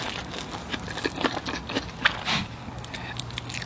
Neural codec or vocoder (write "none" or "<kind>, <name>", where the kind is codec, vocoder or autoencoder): none